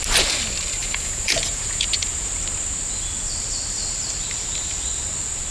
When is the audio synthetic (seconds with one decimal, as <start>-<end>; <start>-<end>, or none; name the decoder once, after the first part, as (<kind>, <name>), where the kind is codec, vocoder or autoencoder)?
0.8-2.3 (vocoder, Vocos)